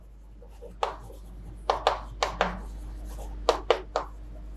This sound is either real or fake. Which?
real